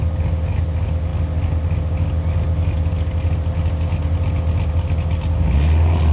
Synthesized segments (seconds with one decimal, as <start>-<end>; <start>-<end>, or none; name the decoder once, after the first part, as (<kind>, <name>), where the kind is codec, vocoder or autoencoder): none